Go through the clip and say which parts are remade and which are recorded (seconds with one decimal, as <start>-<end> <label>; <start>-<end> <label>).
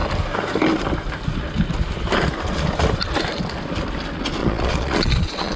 0.0-4.4 recorded; 4.4-5.6 remade